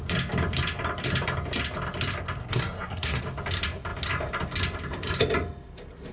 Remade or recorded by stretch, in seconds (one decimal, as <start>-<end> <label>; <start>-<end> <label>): 0.0-2.4 recorded; 2.4-3.2 remade; 3.2-6.1 recorded